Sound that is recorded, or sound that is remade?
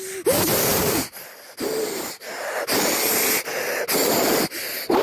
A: recorded